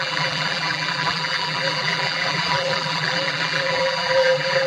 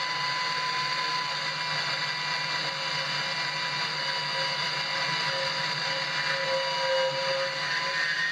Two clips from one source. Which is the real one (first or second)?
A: second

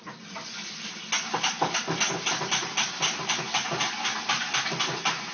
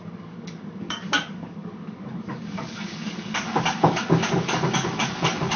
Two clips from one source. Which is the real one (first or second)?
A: first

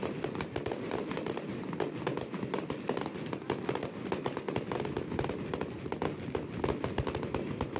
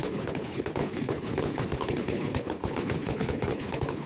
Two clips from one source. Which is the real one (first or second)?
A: first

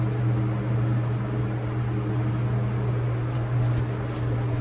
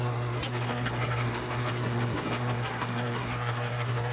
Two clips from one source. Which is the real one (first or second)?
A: first